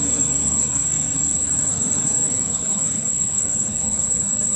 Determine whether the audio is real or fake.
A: fake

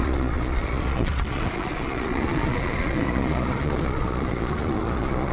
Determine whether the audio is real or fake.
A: fake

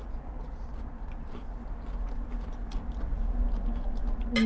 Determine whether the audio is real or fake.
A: real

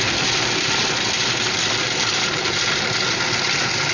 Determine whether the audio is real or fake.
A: real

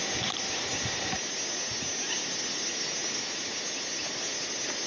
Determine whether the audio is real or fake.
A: real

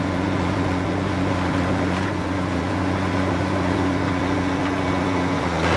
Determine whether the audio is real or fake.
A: fake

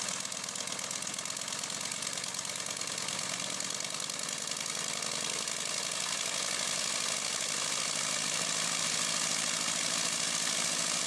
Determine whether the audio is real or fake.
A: real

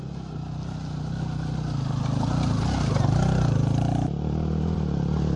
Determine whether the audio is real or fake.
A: real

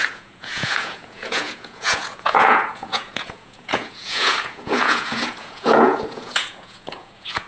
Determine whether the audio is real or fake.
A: fake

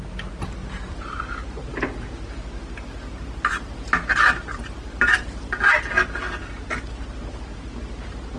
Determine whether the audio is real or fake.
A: real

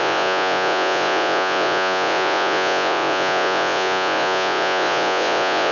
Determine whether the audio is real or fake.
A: fake